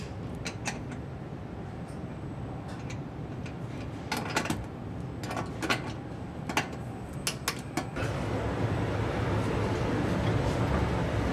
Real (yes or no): yes